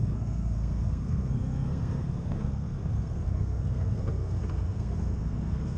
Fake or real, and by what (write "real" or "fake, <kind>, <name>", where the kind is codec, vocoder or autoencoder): fake, codec, SNAC